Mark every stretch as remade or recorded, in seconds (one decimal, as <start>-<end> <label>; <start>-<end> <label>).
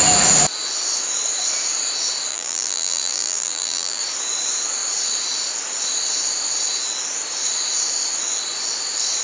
0.0-2.3 recorded; 2.3-4.0 remade; 4.0-9.2 recorded